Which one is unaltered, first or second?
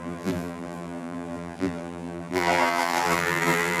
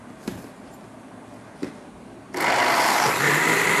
second